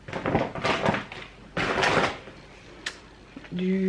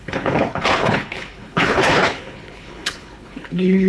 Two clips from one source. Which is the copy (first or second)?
second